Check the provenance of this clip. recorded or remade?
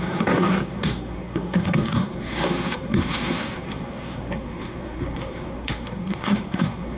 remade